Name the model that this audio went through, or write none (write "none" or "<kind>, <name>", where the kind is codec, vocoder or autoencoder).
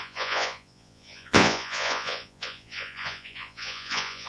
vocoder, Vocos